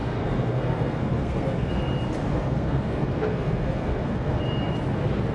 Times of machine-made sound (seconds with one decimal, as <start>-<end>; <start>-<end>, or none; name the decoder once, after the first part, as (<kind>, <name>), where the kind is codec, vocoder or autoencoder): 0.0-1.7 (codec, SNAC); 2.3-4.4